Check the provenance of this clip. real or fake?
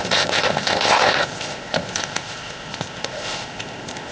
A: fake